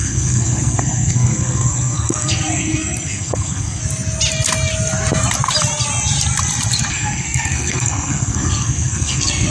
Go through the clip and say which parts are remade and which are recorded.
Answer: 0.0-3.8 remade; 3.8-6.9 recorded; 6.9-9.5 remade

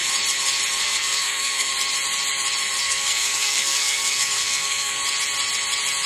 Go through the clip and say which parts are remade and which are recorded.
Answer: 0.0-0.8 recorded; 0.8-1.7 remade; 1.7-2.8 recorded; 2.8-5.0 remade; 5.0-6.1 recorded

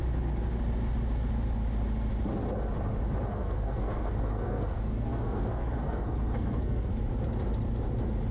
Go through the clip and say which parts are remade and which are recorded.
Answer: 0.0-3.3 recorded; 3.3-6.9 remade; 6.9-8.3 recorded